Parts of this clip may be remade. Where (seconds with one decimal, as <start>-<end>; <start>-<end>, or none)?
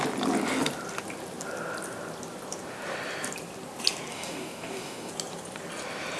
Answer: 4.1-5.1